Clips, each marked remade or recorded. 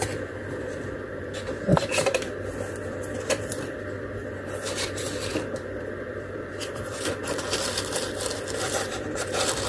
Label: remade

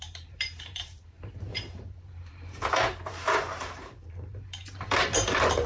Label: remade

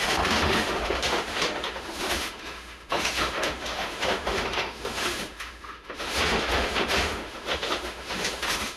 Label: remade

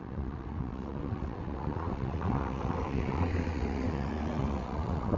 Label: remade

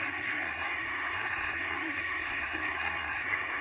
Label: remade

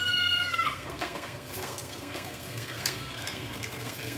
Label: remade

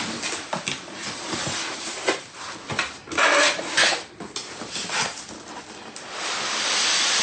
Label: recorded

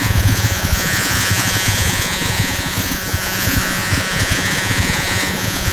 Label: remade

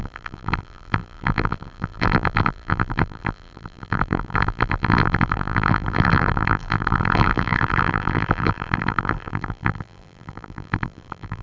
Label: remade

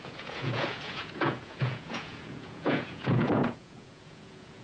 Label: remade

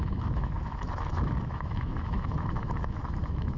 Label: remade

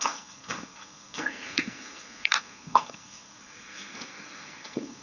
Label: remade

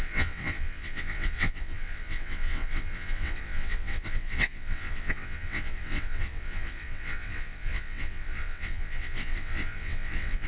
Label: remade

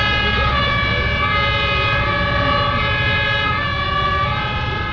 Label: recorded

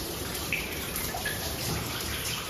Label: remade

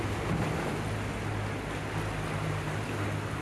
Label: recorded